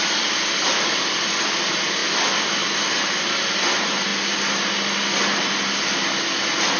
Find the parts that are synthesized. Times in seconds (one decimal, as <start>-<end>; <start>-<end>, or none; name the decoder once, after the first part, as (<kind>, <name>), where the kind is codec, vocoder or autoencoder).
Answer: none